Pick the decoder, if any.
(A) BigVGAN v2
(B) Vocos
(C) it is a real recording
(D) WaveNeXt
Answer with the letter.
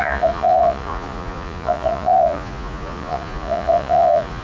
B